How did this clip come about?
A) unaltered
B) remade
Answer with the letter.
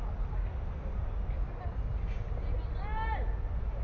A